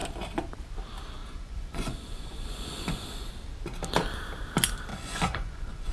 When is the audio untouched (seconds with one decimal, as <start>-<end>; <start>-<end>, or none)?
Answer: 0.0-1.2; 3.3-4.9